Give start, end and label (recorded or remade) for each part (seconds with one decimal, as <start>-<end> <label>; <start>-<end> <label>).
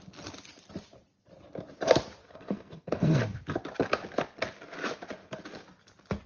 0.0-2.2 recorded; 2.2-3.2 remade; 3.2-6.3 recorded